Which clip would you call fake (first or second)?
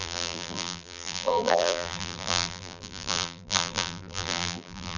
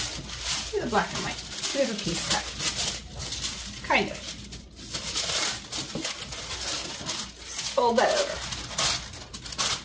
first